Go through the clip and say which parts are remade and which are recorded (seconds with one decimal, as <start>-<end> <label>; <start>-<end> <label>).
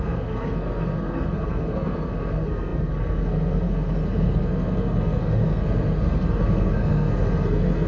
0.0-7.9 remade